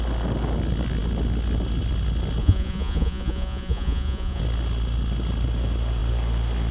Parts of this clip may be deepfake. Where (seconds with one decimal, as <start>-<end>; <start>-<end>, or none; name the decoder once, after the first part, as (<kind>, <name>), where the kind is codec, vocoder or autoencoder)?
2.4-4.4 (vocoder, Vocos)